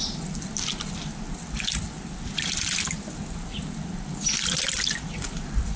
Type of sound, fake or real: real